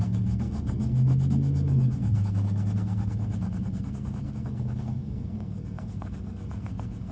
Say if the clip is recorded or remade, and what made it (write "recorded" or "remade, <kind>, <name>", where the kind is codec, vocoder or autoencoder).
remade, codec, SNAC